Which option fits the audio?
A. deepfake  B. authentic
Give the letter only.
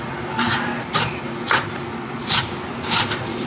B